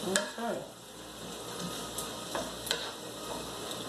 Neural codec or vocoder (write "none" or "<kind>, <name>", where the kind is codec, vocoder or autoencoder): none